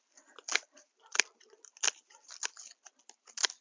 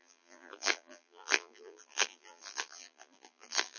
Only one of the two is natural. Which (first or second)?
first